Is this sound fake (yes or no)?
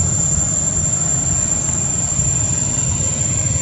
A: no